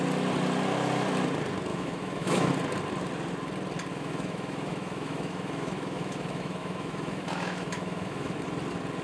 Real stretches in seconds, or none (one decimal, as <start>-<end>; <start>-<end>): 0.0-1.7; 2.5-3.9; 8.4-9.0

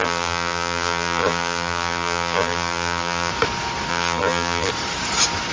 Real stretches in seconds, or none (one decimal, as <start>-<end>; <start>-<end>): 3.3-3.9; 4.7-5.5

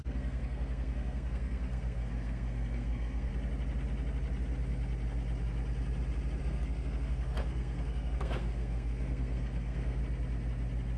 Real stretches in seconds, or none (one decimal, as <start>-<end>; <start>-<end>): 3.3-6.4; 10.0-11.0

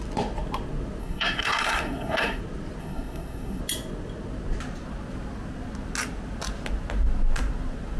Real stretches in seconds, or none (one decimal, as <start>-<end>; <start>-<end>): 0.0-1.0; 2.4-2.8; 3.6-8.0

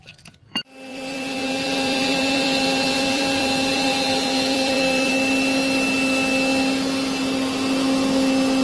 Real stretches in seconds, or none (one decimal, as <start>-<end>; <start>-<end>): 0.0-0.9; 5.1-8.6

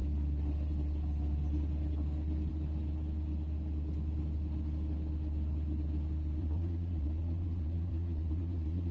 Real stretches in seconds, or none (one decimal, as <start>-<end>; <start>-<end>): 0.0-6.4

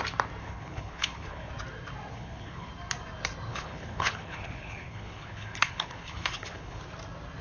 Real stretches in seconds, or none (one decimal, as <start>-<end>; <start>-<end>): 0.0-0.4; 1.5-2.1; 2.7-3.5; 6.8-7.4

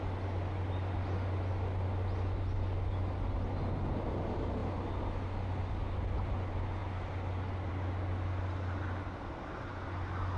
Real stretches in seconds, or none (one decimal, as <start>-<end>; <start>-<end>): 0.0-10.4